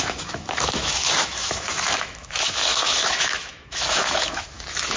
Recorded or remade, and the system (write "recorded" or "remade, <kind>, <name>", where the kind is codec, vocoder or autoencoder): remade, autoencoder, DAC-VAE